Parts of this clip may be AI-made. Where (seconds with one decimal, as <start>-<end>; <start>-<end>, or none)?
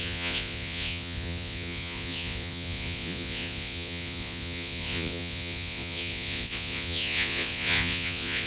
0.0-8.5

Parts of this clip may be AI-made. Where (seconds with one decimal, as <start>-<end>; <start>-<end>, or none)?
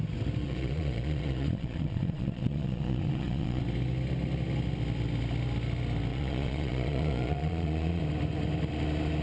0.4-3.6; 6.1-8.0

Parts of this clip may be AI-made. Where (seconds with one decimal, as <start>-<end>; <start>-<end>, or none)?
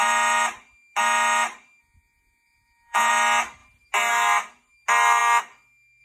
1.8-3.1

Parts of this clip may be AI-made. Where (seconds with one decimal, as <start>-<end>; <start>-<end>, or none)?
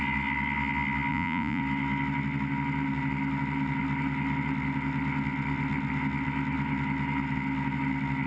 1.1-1.6